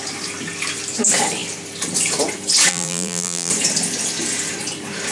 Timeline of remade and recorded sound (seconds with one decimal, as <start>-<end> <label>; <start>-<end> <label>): 0.0-2.7 recorded; 2.7-3.5 remade; 3.5-5.1 recorded